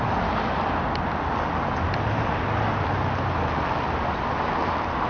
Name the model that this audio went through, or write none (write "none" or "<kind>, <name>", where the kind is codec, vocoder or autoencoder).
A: none